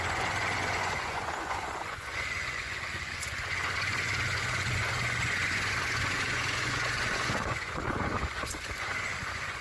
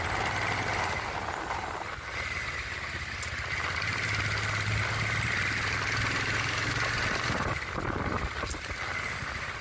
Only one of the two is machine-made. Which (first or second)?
first